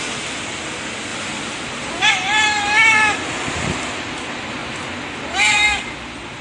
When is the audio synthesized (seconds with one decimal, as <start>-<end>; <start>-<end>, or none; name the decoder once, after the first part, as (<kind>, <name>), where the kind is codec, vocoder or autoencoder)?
0.0-6.4 (vocoder, BigVGAN v2)